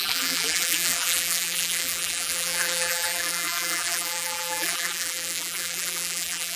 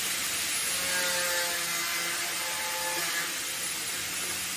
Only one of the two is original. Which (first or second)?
second